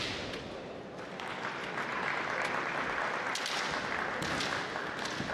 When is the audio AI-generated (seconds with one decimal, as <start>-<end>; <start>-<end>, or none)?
none